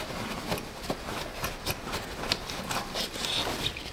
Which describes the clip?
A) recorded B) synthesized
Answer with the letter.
A